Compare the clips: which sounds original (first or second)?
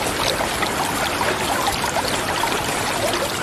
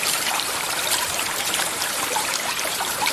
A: first